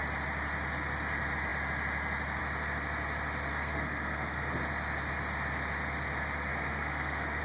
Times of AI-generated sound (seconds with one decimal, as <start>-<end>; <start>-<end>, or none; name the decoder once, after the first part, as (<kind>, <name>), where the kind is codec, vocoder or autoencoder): 3.5-4.5 (codec, SNAC); 6.5-7.4